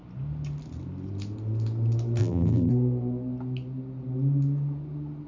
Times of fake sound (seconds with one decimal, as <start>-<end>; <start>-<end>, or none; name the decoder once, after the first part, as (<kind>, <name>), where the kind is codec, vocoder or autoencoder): 2.2-2.7 (vocoder, BigVGAN v2)